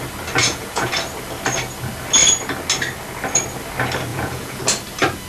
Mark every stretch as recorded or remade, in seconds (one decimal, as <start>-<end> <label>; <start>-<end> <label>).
0.0-0.4 recorded; 0.4-0.9 remade; 0.9-4.1 recorded; 4.1-4.6 remade; 4.6-5.3 recorded